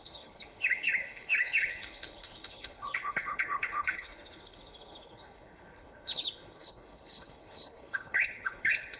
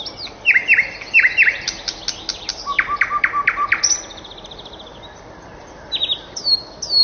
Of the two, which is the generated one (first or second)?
first